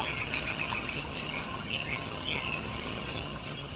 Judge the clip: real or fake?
fake